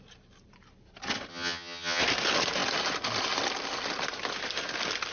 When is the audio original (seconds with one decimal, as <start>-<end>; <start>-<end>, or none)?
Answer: 0.0-1.3; 2.0-5.1